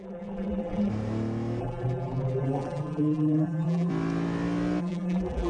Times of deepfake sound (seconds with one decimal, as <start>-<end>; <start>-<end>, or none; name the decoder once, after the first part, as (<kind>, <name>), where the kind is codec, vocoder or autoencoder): 0.0-0.9 (vocoder, BigVGAN v2); 1.6-3.9; 4.8-5.5